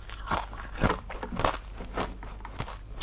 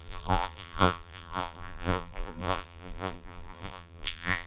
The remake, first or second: second